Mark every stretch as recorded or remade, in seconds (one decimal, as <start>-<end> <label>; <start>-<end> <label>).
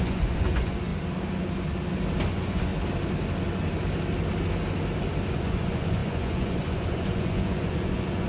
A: 0.0-0.9 remade; 0.9-2.3 recorded; 2.3-2.7 remade; 2.7-5.3 recorded; 5.3-8.3 remade